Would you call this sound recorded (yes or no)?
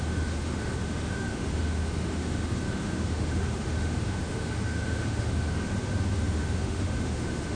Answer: no